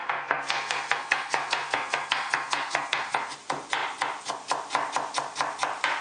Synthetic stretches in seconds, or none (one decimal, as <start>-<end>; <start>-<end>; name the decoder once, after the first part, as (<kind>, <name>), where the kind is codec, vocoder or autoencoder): 0.0-3.3 (codec, SNAC)